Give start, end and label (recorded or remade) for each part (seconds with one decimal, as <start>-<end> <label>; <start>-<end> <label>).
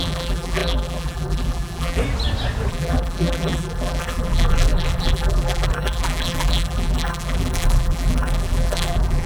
0.0-2.0 remade; 2.0-2.7 recorded; 2.7-9.3 remade